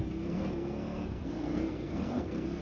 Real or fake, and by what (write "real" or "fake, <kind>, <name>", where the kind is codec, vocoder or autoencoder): fake, codec, SNAC